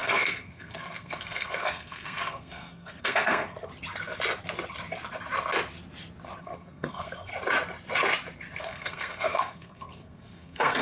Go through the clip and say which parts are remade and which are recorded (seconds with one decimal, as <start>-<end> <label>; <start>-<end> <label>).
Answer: 0.0-3.7 remade; 3.7-6.4 recorded; 6.4-7.3 remade; 7.3-8.6 recorded; 8.6-10.8 remade